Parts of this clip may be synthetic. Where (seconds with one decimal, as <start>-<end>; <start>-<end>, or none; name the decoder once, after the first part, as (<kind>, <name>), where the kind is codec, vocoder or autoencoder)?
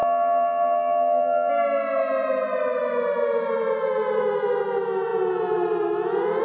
0.0-1.5 (vocoder, HiFi-GAN)